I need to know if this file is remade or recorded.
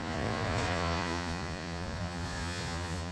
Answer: remade